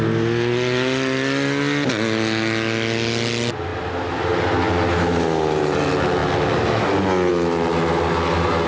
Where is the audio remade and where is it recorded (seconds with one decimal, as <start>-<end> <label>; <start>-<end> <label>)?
0.0-8.7 recorded